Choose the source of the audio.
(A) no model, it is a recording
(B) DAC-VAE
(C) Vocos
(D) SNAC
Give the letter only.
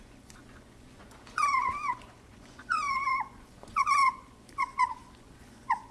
C